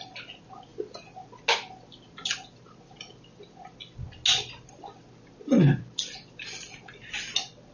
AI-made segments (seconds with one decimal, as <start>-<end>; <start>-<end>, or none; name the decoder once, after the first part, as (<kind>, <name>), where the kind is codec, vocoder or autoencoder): none